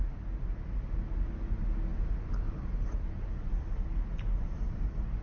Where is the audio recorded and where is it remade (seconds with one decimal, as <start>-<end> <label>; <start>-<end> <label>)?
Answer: 0.0-5.2 recorded